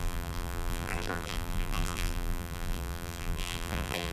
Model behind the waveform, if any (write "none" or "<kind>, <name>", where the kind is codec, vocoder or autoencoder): vocoder, BigVGAN v2